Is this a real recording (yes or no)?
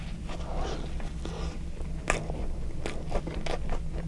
yes